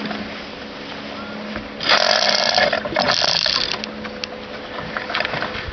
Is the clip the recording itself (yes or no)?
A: yes